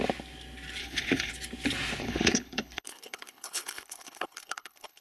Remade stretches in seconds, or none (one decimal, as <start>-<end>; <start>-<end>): 0.8-1.3; 2.0-5.0